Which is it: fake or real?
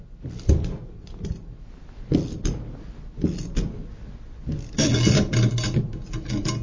real